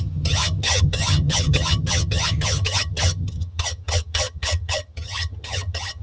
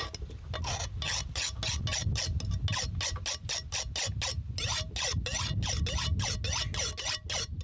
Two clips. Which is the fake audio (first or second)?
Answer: first